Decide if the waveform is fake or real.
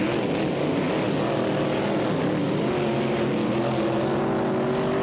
real